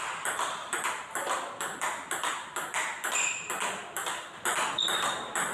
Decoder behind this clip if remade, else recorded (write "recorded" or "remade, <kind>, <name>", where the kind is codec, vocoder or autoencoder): remade, vocoder, BigVGAN v2